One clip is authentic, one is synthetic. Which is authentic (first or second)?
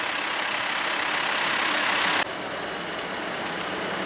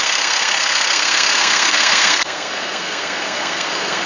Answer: first